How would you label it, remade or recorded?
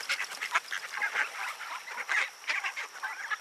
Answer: recorded